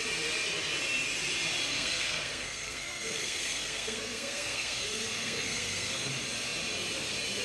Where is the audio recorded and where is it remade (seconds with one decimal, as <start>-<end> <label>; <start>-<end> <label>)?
0.0-1.7 recorded; 1.7-6.1 remade; 6.1-7.4 recorded